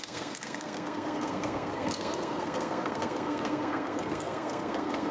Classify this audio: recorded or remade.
remade